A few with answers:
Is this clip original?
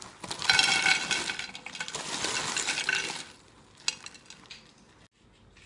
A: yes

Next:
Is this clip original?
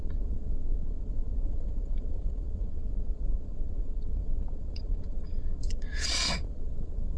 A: no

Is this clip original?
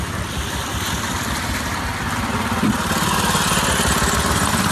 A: yes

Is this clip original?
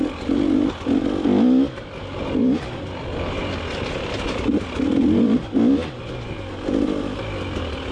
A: yes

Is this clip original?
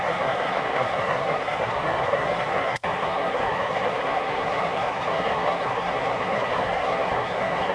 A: no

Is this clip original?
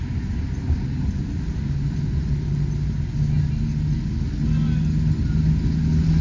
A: yes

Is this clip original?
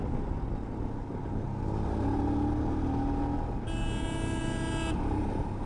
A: yes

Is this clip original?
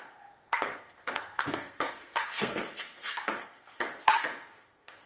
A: no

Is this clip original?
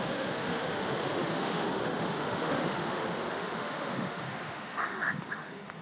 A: no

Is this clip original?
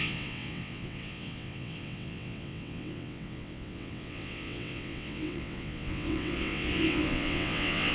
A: no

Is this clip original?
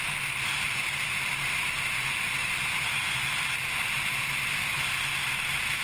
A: yes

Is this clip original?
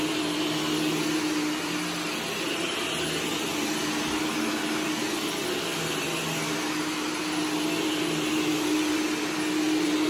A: yes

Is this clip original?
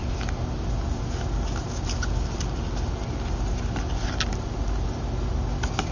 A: yes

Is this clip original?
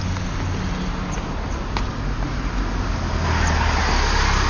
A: yes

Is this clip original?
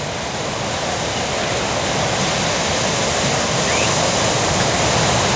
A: yes